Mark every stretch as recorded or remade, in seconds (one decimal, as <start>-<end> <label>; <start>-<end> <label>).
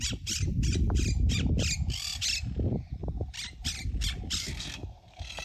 0.0-4.4 recorded; 4.4-5.4 remade